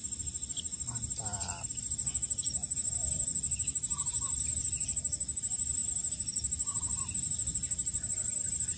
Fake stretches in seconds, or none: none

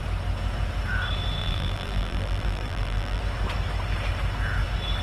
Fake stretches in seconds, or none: 1.4-3.2 (vocoder, BigVGAN v2)

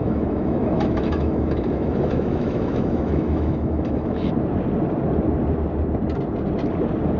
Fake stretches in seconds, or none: 0.0-4.3 (autoencoder, DAC-VAE)

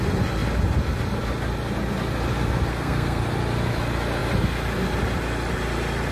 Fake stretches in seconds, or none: 2.7-3.2 (codec, SNAC)

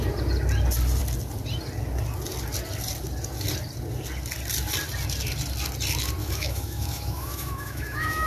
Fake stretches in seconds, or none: 6.2-8.3 (autoencoder, DAC-VAE)

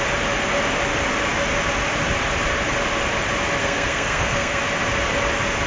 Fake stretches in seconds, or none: 3.6-4.6 (codec, SNAC)

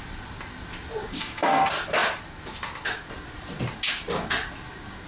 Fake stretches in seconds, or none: 1.0-1.6 (codec, DAC)

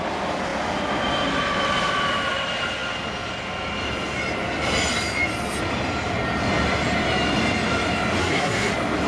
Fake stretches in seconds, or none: 8.2-8.7 (codec, SNAC)